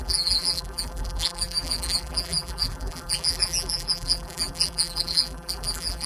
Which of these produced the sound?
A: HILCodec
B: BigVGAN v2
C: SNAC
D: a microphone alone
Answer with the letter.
B